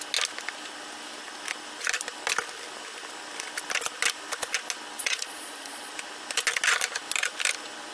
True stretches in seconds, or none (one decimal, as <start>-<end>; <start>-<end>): 0.0-5.0; 5.9-7.9